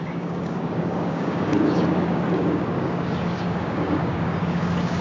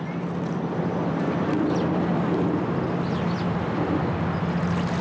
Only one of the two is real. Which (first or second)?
second